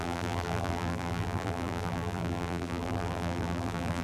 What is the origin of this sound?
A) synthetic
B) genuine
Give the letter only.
A